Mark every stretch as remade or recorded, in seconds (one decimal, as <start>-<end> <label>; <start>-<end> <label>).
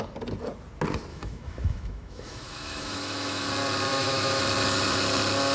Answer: 0.0-1.1 recorded; 1.1-3.5 remade; 3.5-3.9 recorded; 3.9-4.4 remade; 4.4-5.5 recorded